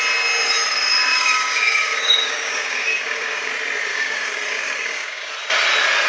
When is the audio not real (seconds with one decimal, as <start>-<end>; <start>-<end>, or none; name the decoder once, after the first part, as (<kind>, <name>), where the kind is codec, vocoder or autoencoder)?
1.1-3.5 (codec, DAC); 3.9-5.3